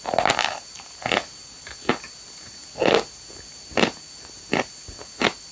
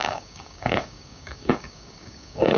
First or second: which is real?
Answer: first